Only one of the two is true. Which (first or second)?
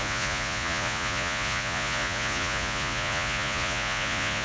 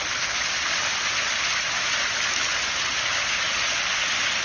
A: second